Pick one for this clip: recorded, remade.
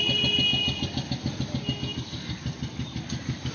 recorded